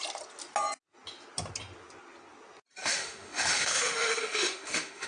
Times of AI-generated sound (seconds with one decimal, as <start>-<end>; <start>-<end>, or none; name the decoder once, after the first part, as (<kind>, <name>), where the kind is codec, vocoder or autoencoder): 2.8-5.1 (autoencoder, DAC-VAE)